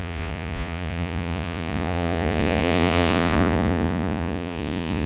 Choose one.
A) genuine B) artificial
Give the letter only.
B